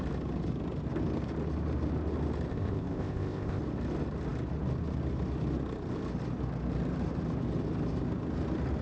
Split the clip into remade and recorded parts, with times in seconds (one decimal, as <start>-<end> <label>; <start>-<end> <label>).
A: 0.0-2.5 recorded; 2.5-3.6 remade; 3.6-8.8 recorded